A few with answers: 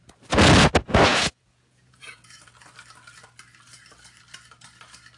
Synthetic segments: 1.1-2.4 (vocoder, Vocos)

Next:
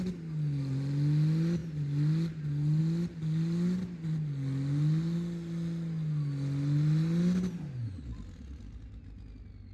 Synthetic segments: none

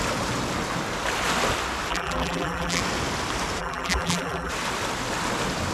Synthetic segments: 1.9-2.8 (vocoder, BigVGAN v2); 3.6-4.5